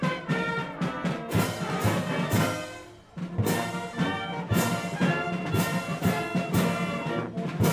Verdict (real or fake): real